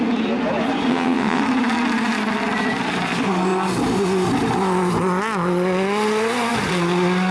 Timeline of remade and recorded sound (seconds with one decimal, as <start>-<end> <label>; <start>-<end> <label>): 0.0-0.9 recorded; 0.9-1.4 remade; 1.4-7.3 recorded